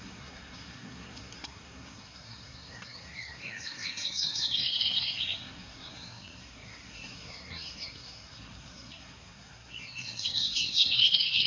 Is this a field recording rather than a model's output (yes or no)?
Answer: no